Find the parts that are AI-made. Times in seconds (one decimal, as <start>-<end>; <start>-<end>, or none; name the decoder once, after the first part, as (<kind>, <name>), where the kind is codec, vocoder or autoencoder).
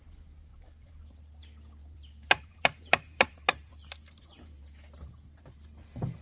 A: 0.5-1.4 (vocoder, BigVGAN v2); 1.8-5.5